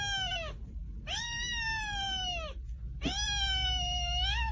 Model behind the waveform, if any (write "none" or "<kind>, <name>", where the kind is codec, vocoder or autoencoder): none